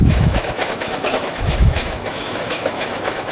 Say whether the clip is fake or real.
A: fake